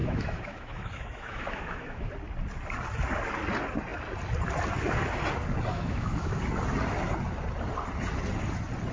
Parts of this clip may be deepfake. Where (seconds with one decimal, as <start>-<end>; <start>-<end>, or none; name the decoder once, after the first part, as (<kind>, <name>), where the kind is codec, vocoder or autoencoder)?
0.0-2.1 (autoencoder, DAC-VAE); 5.7-6.4